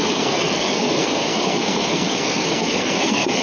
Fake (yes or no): yes